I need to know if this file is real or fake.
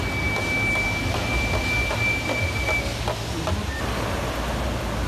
real